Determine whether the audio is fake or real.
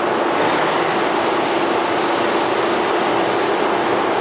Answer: real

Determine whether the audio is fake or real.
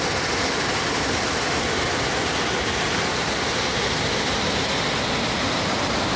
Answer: real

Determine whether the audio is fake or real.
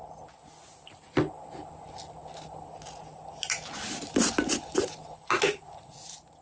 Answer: real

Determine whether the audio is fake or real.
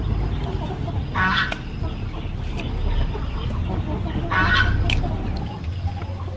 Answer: real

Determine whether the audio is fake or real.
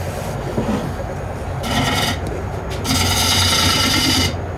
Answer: real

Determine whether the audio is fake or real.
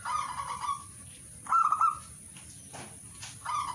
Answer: real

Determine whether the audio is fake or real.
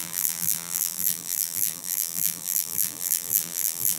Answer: fake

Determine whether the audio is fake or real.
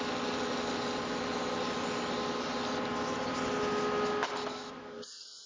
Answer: real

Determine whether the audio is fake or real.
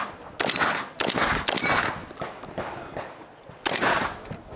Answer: real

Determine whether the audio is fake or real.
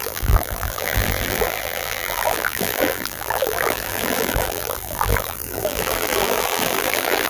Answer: fake